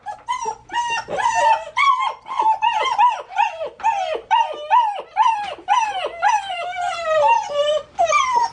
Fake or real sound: fake